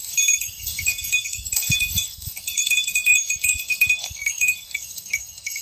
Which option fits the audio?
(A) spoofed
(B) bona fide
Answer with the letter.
A